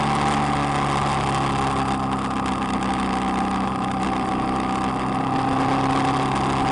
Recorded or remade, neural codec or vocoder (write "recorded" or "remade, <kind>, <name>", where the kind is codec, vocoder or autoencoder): recorded